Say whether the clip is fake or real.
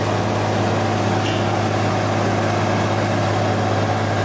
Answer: real